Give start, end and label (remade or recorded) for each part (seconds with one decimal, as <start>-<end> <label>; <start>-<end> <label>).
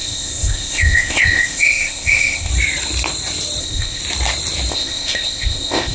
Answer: 0.0-2.5 remade; 2.5-3.6 recorded; 3.6-4.0 remade; 4.0-4.7 recorded; 4.7-5.9 remade